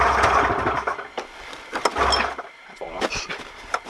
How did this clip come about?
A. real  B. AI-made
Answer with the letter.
A